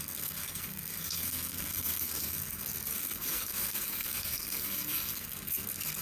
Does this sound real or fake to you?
fake